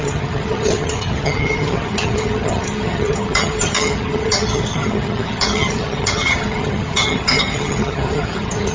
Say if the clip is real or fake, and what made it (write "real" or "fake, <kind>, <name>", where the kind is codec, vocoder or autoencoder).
fake, vocoder, HiFi-GAN